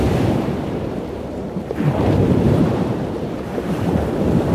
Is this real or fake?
fake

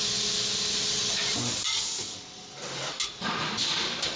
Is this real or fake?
real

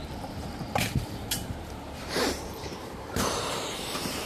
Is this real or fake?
fake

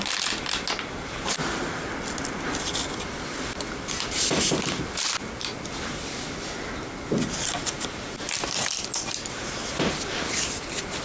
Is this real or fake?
real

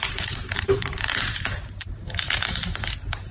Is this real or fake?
fake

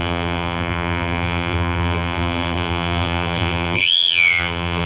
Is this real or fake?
fake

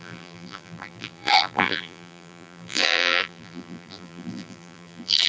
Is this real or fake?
fake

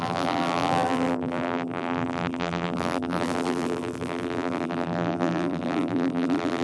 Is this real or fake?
fake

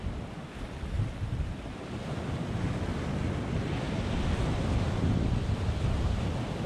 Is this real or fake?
real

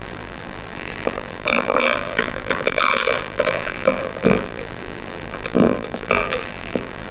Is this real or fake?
fake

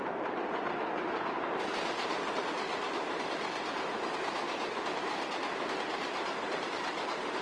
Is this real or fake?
fake